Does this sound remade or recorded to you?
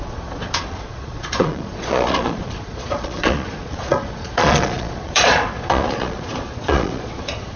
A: remade